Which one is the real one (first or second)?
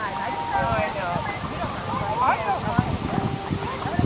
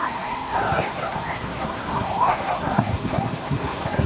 first